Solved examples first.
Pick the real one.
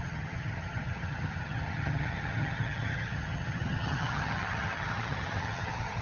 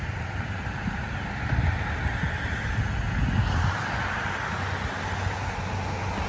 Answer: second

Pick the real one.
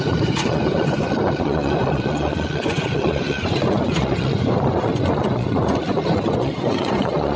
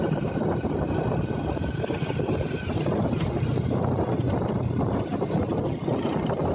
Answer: second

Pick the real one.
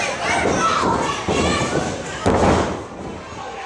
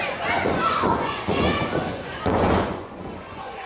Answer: first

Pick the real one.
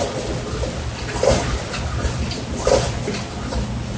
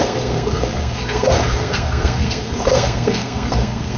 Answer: first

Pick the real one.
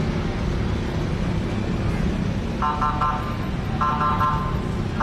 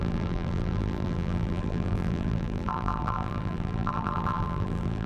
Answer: first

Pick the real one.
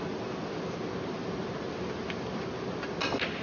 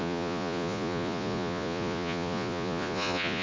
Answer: first